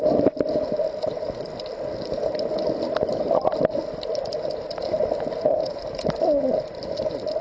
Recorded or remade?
recorded